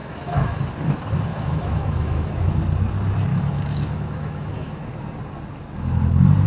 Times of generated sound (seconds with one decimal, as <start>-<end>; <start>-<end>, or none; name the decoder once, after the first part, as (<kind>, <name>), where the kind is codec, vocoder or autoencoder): 0.0-0.6 (autoencoder, DAC-VAE); 1.3-2.6; 3.3-4.8